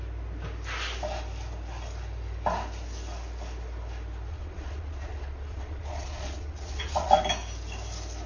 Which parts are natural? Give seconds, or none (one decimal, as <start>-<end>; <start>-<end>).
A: 0.0-4.3; 7.1-8.3